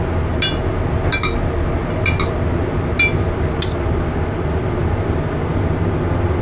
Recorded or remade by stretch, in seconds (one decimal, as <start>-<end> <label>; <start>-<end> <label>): 0.0-6.4 recorded